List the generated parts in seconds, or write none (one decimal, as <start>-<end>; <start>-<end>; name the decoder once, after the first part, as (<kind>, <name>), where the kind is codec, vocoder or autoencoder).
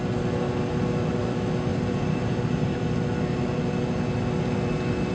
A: none